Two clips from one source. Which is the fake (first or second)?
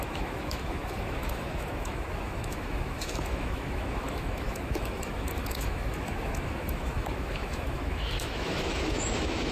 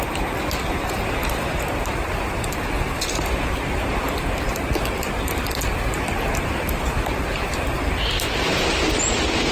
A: first